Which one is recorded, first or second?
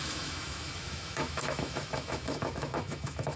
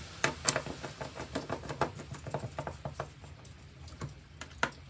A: second